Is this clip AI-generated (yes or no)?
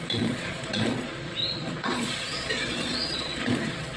yes